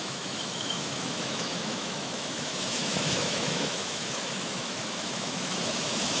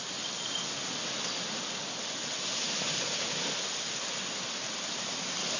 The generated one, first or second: first